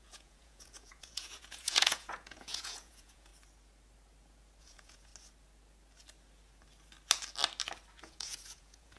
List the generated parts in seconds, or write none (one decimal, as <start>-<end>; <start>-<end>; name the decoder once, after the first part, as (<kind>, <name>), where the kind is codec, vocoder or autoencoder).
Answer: 0.0-3.3 (vocoder, Vocos); 4.6-5.1; 8.0-9.0